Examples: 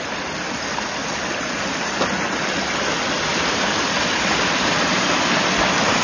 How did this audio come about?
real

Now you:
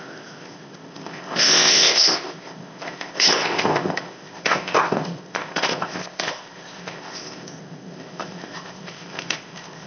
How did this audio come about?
fake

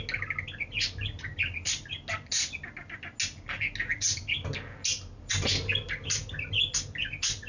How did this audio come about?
real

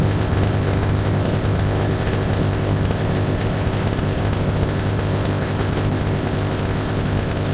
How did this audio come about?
fake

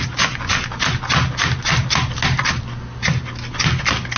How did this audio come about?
real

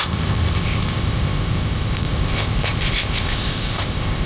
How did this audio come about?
fake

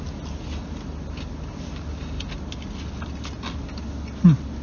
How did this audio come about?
real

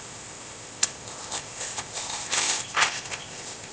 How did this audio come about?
fake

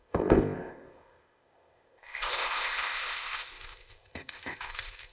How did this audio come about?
fake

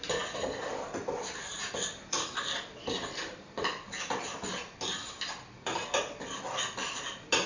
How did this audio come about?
real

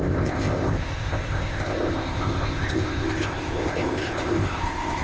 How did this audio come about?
fake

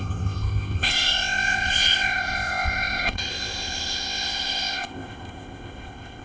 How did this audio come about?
fake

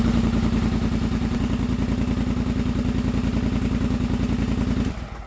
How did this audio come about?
real